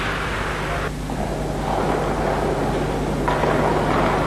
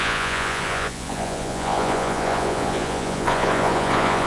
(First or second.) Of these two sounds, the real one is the first